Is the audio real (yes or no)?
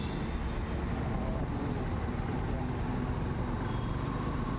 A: yes